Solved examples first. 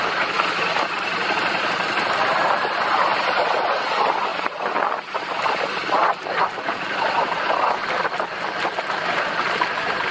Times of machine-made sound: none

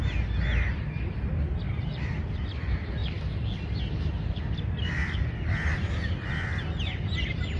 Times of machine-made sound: none

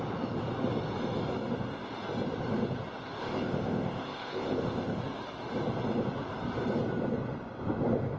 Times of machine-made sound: 3.2-5.0 (codec, ZipCodec)

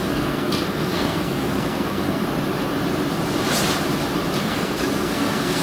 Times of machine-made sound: 0.0-2.2 (codec, SNAC); 4.4-5.6

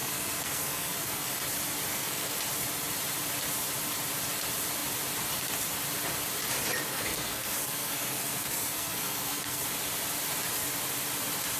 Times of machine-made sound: 0.0-1.3 (codec, SNAC); 1.9-2.4; 6.9-9.6

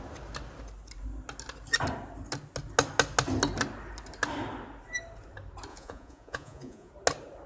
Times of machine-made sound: 5.7-6.9 (vocoder, Vocos)

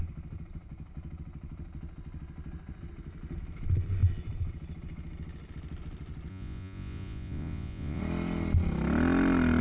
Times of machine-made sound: 6.3-8.0 (vocoder, Vocos)